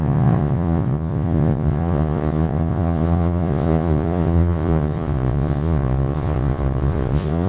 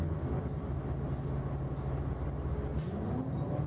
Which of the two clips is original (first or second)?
second